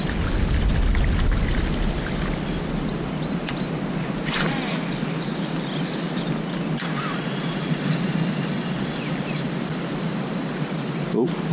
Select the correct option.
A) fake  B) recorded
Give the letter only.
B